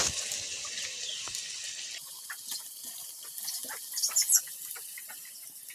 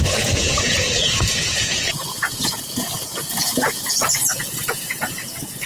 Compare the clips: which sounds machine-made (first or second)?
second